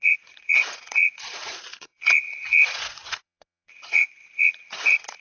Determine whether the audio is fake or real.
fake